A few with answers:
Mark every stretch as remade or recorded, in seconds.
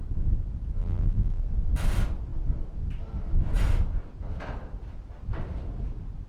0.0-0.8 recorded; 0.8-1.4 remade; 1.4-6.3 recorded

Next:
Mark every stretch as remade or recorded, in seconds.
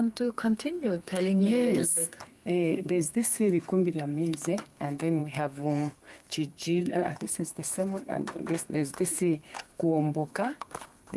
0.0-11.2 remade